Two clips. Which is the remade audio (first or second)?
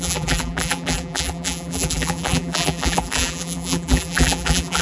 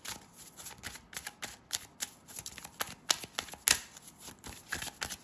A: first